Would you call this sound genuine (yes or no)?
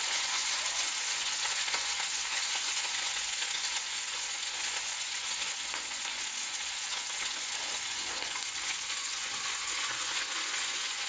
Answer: no